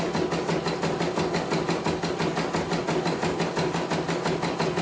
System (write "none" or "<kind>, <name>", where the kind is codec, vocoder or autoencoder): none